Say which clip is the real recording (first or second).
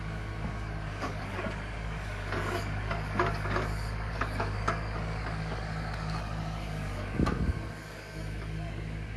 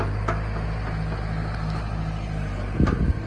second